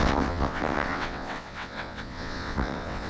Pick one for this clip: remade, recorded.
remade